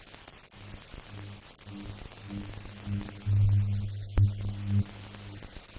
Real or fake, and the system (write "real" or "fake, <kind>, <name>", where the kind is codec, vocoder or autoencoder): real